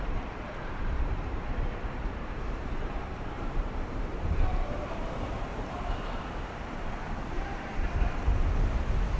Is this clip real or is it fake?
fake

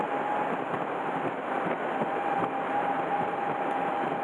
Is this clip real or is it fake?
real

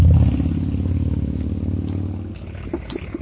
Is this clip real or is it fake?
real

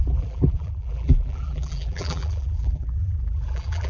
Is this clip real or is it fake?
fake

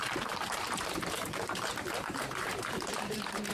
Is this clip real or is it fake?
fake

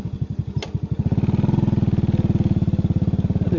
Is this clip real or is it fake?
real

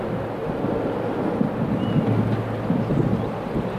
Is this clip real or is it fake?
fake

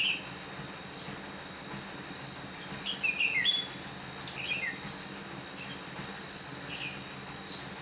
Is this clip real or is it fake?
real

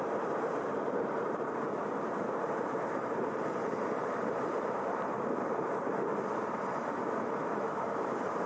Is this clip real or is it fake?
fake